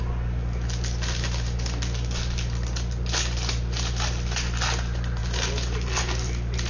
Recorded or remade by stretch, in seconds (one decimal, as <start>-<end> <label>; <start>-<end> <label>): 0.0-6.7 recorded